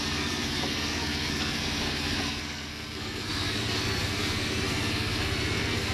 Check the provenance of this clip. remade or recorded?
remade